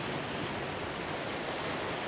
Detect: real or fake real